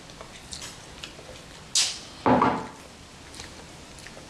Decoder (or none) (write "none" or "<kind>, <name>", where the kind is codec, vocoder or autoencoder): none